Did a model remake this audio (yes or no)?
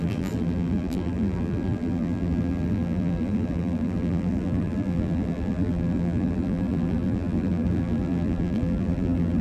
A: yes